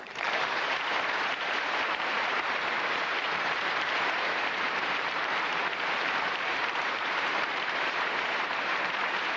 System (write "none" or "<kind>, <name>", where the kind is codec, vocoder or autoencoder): vocoder, BigVGAN v2